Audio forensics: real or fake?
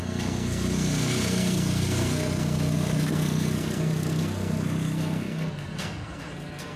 fake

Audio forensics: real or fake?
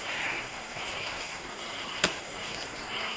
fake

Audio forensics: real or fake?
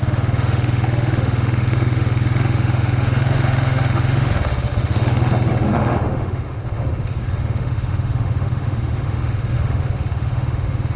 fake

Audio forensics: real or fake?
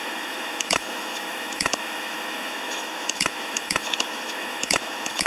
fake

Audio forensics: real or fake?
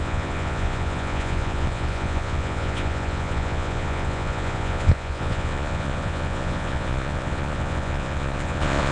fake